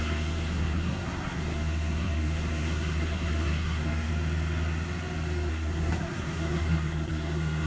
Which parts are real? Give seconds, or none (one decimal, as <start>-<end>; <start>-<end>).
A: 4.1-5.5